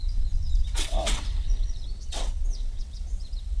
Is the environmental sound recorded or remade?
remade